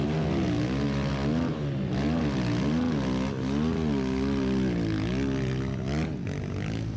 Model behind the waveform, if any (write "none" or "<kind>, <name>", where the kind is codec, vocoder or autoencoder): none